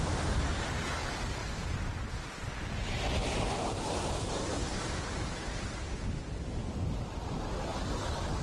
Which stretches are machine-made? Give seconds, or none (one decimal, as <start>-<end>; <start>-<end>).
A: 1.4-2.1; 3.2-5.2; 7.7-8.4

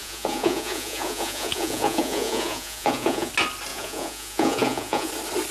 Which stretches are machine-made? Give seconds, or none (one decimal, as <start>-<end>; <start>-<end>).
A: 0.0-3.3; 3.7-5.1